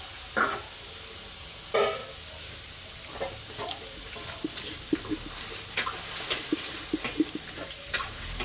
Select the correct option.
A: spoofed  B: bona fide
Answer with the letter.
B